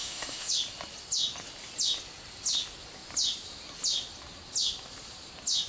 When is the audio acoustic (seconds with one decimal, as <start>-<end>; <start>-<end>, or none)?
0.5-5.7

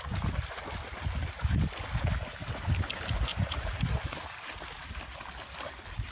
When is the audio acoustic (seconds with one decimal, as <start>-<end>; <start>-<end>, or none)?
0.0-3.3; 3.8-6.1

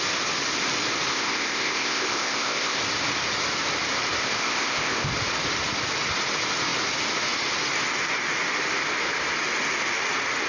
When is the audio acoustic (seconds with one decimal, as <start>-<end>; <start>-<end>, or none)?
0.0-1.1; 2.8-4.2; 5.1-10.5